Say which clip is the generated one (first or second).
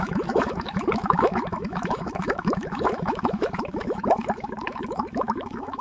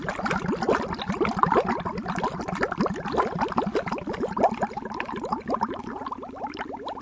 first